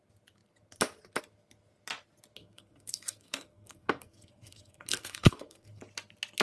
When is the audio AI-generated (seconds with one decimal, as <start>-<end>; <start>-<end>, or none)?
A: 2.4-5.8